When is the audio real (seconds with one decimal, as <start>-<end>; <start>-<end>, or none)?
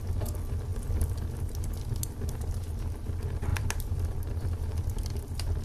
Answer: 0.0-0.7; 1.6-3.5; 4.4-5.6